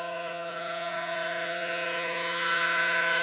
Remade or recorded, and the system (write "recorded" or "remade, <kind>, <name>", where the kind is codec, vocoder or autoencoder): remade, vocoder, Vocos